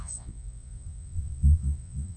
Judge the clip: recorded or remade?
remade